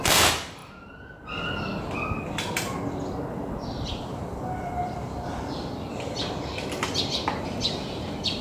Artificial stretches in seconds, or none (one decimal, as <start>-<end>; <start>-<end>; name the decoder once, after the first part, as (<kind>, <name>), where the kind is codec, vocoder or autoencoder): 0.0-0.6 (vocoder, BigVGAN v2); 3.9-8.4